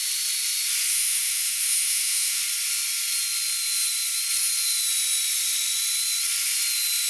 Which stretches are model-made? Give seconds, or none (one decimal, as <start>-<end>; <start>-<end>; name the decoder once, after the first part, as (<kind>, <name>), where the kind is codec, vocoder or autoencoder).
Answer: 0.9-2.4 (autoencoder, DAC-VAE)